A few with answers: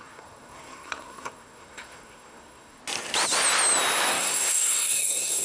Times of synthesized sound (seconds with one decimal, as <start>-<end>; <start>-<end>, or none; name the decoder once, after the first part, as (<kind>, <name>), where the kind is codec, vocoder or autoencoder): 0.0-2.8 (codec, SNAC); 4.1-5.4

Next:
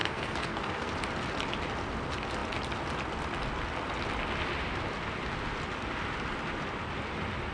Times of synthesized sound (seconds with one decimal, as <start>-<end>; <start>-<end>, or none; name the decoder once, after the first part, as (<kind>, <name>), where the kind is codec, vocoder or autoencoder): 0.0-0.9 (codec, SNAC)

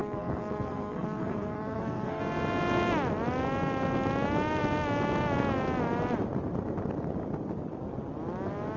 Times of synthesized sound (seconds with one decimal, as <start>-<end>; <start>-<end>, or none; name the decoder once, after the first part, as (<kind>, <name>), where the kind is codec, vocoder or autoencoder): 0.0-2.2 (codec, SNAC)